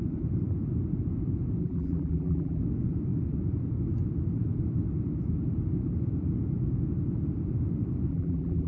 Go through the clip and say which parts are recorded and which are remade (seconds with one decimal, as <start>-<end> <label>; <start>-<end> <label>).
0.0-1.6 recorded; 1.6-2.6 remade; 2.6-8.1 recorded; 8.1-8.7 remade